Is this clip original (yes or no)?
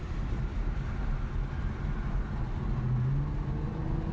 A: yes